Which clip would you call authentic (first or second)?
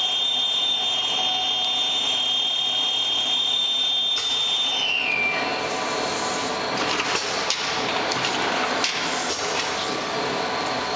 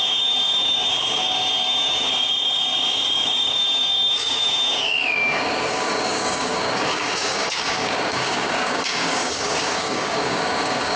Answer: first